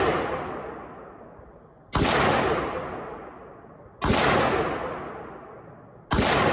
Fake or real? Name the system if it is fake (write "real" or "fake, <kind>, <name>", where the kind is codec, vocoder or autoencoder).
real